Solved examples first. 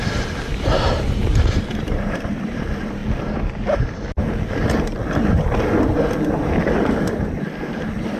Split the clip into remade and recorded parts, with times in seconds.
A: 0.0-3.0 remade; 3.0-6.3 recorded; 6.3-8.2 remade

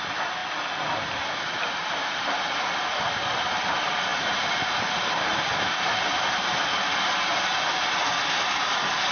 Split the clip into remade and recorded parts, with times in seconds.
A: 0.0-9.1 recorded

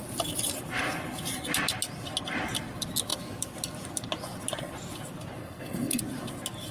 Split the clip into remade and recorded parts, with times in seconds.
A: 0.0-5.4 recorded; 5.4-6.0 remade; 6.0-6.7 recorded

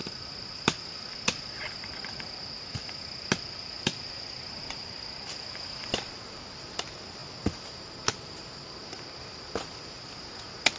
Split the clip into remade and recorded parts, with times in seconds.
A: 0.0-10.8 recorded

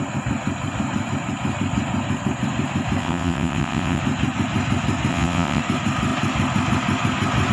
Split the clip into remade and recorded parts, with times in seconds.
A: 0.0-3.0 recorded; 3.0-4.0 remade; 4.0-5.1 recorded; 5.1-5.6 remade; 5.6-7.5 recorded

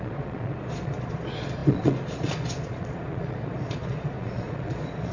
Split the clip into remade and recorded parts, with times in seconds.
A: 0.0-5.1 remade

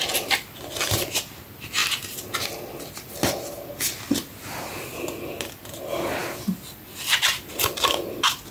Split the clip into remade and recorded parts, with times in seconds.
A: 0.0-8.5 recorded